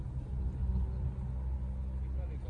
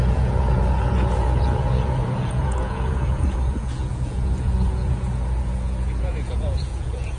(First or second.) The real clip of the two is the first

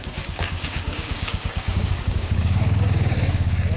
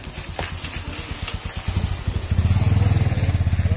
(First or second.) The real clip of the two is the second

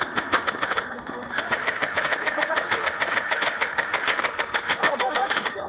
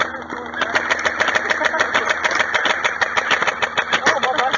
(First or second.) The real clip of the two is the second